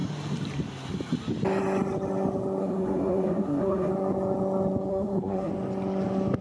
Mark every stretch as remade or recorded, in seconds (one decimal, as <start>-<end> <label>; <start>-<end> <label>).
0.0-2.6 recorded; 2.6-3.9 remade; 3.9-4.9 recorded; 4.9-5.5 remade; 5.5-6.4 recorded